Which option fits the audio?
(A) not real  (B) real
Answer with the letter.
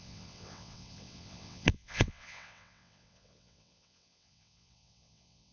A